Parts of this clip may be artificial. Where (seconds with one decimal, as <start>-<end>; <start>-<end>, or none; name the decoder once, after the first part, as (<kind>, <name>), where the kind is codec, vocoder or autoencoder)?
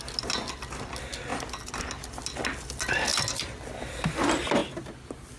none